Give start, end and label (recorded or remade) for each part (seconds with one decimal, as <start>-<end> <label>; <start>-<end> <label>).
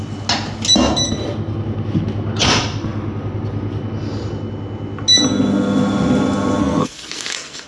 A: 0.0-6.6 recorded; 6.6-7.7 remade